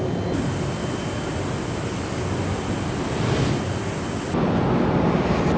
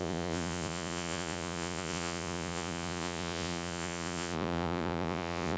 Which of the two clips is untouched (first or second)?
first